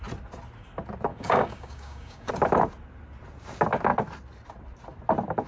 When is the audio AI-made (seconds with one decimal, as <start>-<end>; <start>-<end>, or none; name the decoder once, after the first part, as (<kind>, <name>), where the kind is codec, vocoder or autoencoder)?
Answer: 1.1-2.3 (codec, DAC)